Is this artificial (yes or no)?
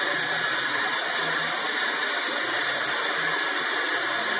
no